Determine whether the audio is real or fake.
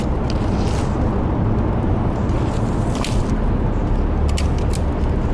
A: real